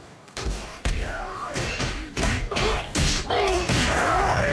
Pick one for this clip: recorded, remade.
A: remade